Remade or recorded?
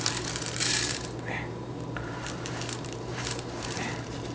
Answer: remade